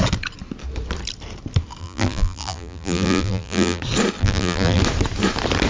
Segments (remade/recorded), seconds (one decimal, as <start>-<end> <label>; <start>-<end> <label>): 0.0-1.8 recorded; 1.8-3.8 remade; 3.8-4.2 recorded; 4.2-4.8 remade; 4.8-5.7 recorded